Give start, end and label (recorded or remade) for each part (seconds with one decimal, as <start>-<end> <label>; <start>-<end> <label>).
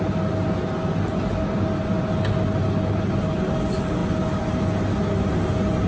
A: 0.0-5.9 recorded